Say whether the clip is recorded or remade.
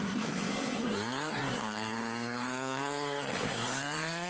remade